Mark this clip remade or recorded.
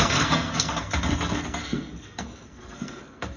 remade